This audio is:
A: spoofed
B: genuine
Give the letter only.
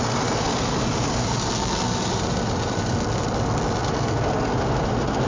B